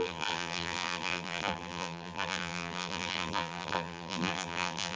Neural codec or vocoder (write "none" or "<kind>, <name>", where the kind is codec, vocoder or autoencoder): vocoder, BigVGAN v2